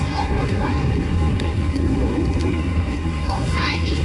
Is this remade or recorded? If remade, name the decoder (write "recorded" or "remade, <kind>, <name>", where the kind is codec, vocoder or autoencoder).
remade, codec, SNAC